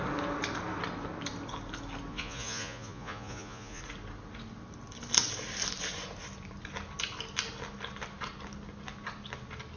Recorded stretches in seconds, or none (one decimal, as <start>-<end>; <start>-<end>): 0.0-2.1; 3.8-9.8